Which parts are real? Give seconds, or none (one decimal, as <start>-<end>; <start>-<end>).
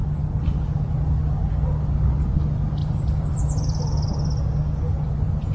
0.9-2.8; 3.8-5.5